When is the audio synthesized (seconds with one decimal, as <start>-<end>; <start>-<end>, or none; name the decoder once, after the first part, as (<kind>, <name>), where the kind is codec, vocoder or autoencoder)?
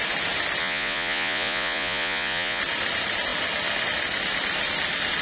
0.6-2.6 (vocoder, Vocos)